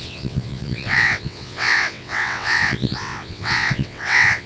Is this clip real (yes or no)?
no